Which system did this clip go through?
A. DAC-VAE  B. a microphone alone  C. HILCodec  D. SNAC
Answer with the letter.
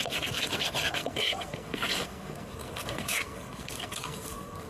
D